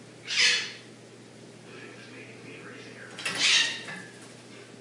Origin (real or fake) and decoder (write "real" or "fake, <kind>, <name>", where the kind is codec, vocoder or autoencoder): real